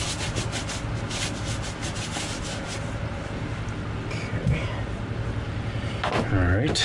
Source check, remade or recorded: recorded